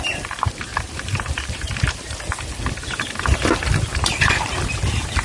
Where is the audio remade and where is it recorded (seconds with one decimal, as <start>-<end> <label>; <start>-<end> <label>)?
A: 0.0-0.7 recorded; 0.7-2.2 remade; 2.2-3.9 recorded; 3.9-4.6 remade; 4.6-5.2 recorded